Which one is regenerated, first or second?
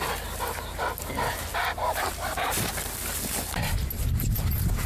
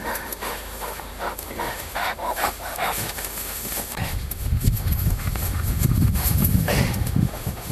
second